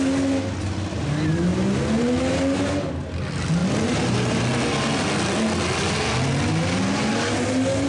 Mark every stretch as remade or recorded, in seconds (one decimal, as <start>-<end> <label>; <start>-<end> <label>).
0.0-3.6 recorded; 3.6-4.4 remade; 4.4-7.9 recorded